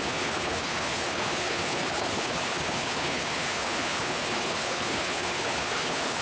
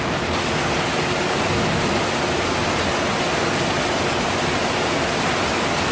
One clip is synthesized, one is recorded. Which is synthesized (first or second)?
first